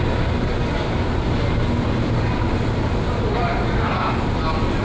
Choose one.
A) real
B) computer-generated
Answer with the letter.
A